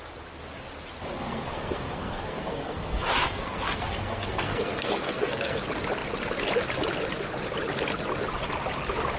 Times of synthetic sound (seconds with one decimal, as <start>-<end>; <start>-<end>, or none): 1.1-5.6